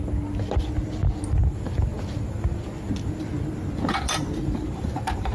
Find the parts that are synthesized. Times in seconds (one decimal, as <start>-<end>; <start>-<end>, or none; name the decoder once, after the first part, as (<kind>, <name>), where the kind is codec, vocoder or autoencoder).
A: 1.4-2.2 (vocoder, BigVGAN v2); 3.3-5.3